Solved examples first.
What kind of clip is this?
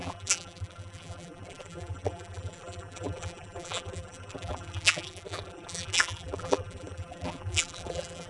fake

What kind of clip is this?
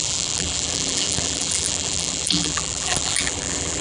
fake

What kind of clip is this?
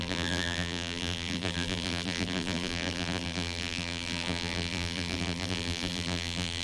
fake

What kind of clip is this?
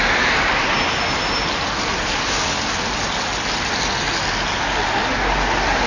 real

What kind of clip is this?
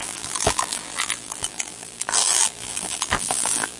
fake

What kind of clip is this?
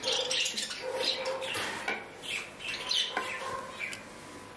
real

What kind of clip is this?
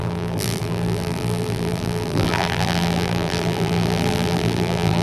fake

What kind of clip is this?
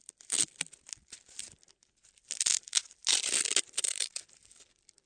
real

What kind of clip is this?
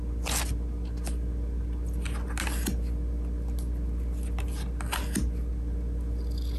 real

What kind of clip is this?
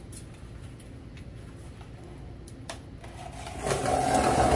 real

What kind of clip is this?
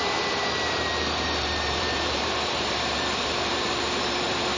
fake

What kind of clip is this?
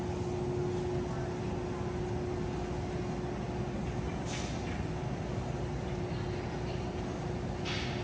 real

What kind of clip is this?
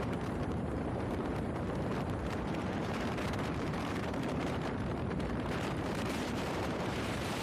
fake